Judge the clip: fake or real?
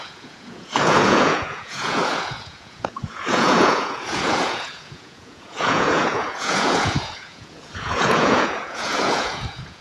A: fake